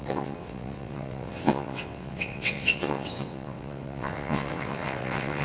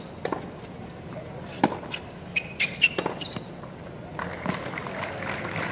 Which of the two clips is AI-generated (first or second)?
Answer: first